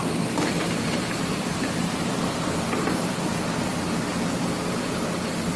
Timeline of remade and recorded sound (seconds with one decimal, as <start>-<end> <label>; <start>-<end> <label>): 0.0-4.1 remade; 4.1-4.8 recorded; 4.8-5.6 remade

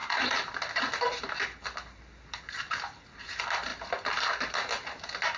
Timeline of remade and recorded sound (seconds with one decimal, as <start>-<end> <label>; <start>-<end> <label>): 0.0-5.4 remade

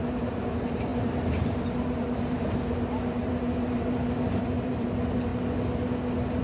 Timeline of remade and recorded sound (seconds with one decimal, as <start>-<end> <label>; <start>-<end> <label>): 0.0-5.3 remade; 5.3-6.4 recorded

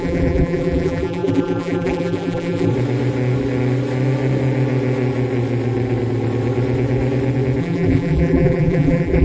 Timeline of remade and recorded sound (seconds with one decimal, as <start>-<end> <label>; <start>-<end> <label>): 0.0-2.7 remade; 2.7-7.6 recorded; 7.6-9.2 remade

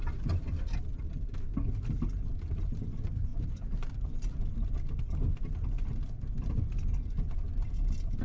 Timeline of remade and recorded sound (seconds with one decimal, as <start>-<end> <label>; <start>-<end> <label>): 0.0-3.3 recorded; 3.3-4.5 remade; 4.5-8.2 recorded

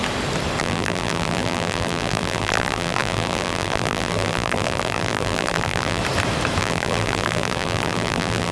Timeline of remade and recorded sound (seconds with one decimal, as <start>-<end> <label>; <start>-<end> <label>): 0.0-0.6 recorded; 0.6-6.0 remade; 6.0-6.6 recorded; 6.6-8.5 remade

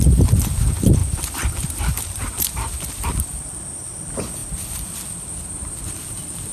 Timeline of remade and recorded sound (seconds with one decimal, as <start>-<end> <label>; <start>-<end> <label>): 0.0-1.0 remade; 1.0-3.0 recorded; 3.0-6.5 remade